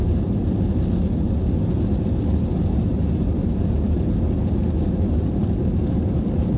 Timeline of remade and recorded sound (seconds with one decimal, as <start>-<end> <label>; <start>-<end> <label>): 0.0-0.5 remade; 0.5-2.9 recorded; 2.9-3.7 remade; 3.7-6.6 recorded